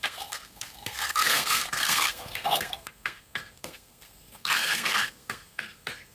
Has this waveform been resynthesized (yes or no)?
yes